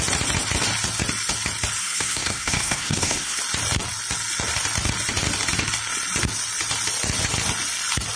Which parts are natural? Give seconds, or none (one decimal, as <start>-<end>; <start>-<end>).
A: 0.0-1.8; 3.4-8.2